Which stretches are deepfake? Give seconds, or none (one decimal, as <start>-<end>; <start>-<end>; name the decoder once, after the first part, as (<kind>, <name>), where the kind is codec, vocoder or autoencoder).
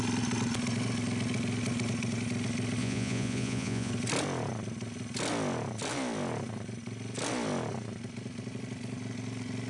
2.8-3.9 (vocoder, Vocos)